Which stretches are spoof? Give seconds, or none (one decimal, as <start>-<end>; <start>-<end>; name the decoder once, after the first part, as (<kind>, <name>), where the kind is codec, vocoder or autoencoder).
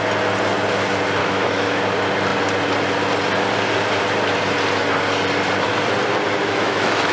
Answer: 1.2-1.8 (autoencoder, DAC-VAE); 6.4-7.1